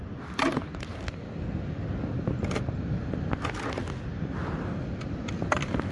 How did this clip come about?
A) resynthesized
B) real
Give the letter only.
B